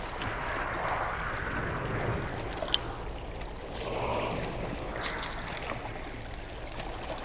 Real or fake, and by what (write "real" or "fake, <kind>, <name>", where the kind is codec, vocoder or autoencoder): real